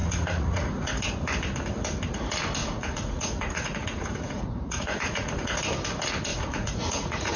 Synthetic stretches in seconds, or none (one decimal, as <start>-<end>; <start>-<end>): 0.0-0.9; 2.6-5.6; 6.3-7.4